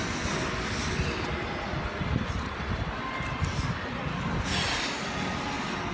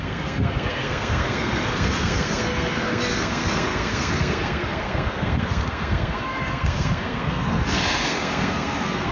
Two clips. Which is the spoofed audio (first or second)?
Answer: second